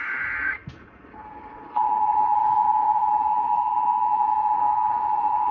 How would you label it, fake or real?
fake